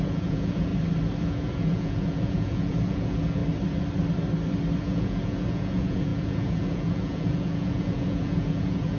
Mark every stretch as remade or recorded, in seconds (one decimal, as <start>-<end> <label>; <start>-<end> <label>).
0.0-0.7 remade; 0.7-1.2 recorded; 1.2-3.4 remade; 3.4-4.8 recorded; 4.8-9.0 remade